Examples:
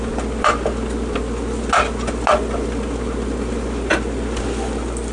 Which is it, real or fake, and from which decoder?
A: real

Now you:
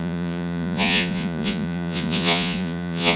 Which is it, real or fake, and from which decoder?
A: fake, vocoder, Vocos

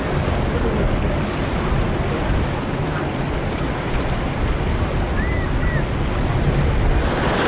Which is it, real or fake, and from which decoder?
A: real